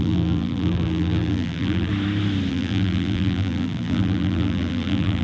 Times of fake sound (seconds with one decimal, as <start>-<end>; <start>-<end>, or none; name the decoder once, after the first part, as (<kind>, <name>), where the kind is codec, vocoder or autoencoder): 0.0-1.9 (vocoder, BigVGAN v2); 2.5-5.2